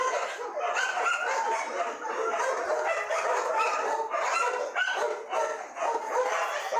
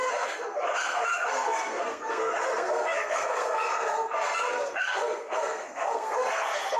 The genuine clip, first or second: first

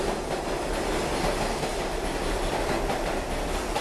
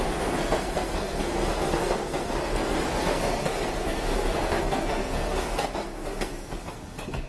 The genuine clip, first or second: first